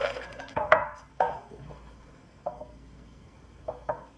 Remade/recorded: remade